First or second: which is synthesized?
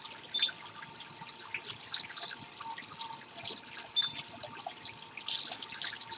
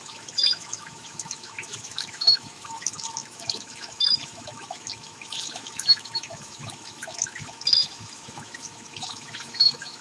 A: second